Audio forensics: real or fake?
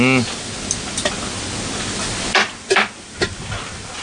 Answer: real